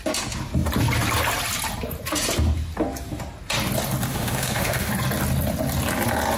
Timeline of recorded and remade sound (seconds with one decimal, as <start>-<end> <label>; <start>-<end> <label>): 0.0-4.1 recorded; 4.1-4.9 remade; 4.9-6.4 recorded